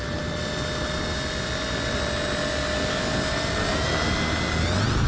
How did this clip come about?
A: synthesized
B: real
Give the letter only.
B